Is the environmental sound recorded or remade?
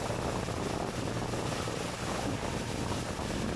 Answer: recorded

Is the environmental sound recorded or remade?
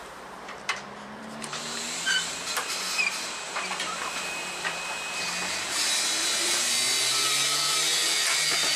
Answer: remade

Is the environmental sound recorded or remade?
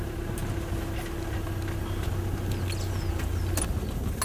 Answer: recorded